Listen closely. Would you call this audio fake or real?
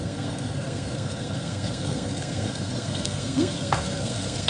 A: fake